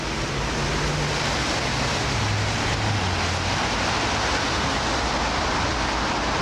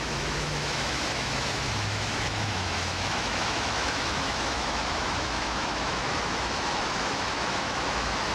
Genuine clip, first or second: first